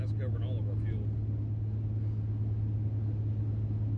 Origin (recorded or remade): recorded